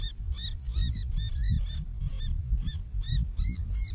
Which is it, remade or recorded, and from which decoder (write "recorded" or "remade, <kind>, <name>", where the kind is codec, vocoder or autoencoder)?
recorded